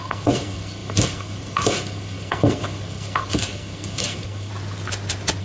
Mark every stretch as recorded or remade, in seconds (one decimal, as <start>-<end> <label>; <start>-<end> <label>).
0.0-4.5 remade; 4.5-5.4 recorded